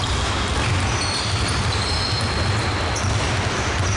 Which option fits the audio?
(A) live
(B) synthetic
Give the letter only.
A